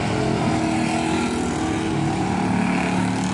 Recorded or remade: recorded